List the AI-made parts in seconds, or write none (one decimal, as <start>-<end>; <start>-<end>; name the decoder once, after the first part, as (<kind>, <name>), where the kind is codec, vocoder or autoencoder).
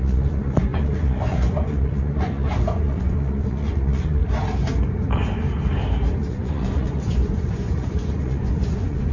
0.0-4.2 (vocoder, Vocos); 6.2-9.1